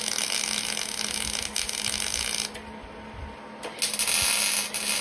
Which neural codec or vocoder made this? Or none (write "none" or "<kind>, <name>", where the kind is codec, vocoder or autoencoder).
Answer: none